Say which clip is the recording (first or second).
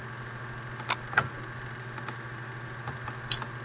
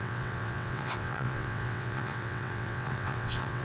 first